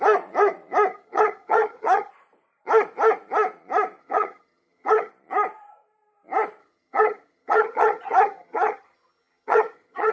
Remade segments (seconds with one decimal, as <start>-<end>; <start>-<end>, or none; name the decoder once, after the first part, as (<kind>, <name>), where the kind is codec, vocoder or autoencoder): 0.9-2.1 (vocoder, HiFi-GAN); 4.0-5.1; 6.6-10.1